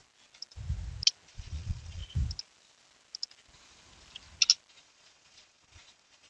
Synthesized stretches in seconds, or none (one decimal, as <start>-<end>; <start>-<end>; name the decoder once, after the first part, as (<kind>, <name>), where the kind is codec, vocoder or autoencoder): 1.3-2.0 (vocoder, Vocos); 4.7-6.3